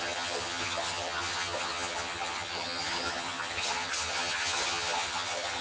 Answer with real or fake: fake